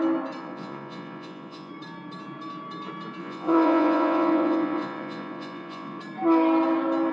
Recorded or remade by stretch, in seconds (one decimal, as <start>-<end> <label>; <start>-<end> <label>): 0.0-0.4 recorded; 0.4-1.7 remade; 1.7-3.2 recorded; 3.2-6.0 remade; 6.0-7.1 recorded